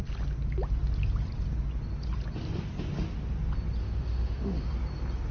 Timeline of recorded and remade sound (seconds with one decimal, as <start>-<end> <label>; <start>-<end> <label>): 0.0-3.8 recorded; 3.8-4.7 remade; 4.7-5.3 recorded